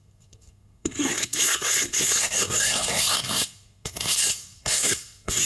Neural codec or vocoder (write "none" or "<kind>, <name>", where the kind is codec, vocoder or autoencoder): codec, SNAC